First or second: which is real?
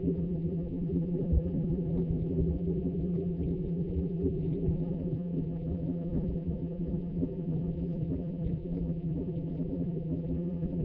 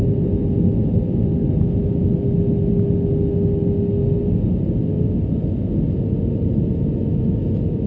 second